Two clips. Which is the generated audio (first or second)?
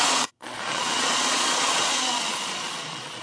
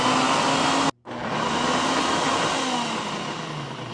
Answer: first